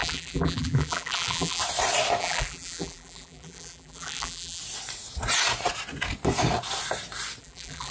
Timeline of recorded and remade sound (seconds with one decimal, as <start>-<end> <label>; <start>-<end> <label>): 0.0-1.6 remade; 1.6-2.2 recorded; 2.2-4.6 remade; 4.6-7.4 recorded; 7.4-7.9 remade